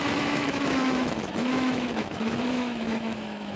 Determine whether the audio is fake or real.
fake